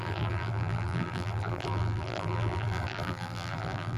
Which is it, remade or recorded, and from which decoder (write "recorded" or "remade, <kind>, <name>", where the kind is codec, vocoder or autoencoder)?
remade, vocoder, BigVGAN v2